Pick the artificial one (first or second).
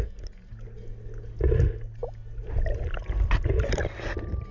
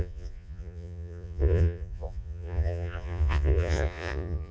second